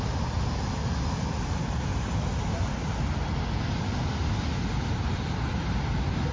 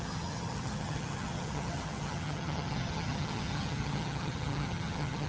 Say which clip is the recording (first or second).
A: first